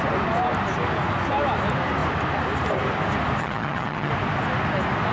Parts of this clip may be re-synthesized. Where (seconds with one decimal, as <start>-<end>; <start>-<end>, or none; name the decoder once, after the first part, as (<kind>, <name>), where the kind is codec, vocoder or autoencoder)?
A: 3.4-4.1 (vocoder, HiFi-GAN)